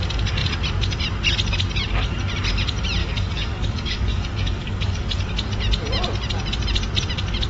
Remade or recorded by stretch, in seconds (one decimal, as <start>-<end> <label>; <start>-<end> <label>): 0.0-3.0 recorded; 3.0-5.2 remade; 5.2-7.5 recorded